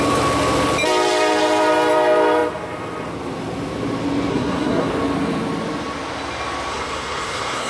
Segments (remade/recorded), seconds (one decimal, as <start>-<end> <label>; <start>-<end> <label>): 0.0-4.3 recorded; 4.3-4.9 remade; 4.9-6.7 recorded; 6.7-7.7 remade